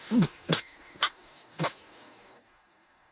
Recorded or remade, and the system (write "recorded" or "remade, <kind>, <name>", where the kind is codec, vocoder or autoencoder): remade, codec, DAC